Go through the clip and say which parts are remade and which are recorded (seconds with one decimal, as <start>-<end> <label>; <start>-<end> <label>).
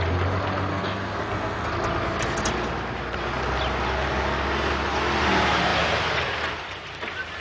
0.0-0.7 recorded; 0.7-1.7 remade; 1.7-7.4 recorded